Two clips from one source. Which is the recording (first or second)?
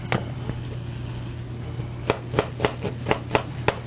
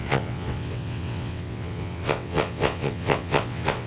first